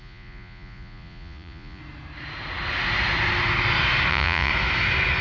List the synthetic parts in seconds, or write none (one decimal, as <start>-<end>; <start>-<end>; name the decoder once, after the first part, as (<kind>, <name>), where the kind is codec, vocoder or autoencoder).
0.0-1.8 (vocoder, Vocos); 4.1-4.5